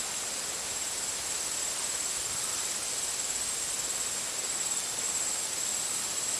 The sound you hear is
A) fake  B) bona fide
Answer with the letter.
B